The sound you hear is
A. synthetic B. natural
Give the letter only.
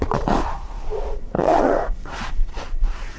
A